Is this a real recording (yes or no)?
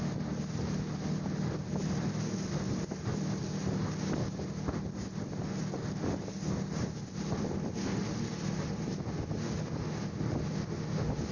yes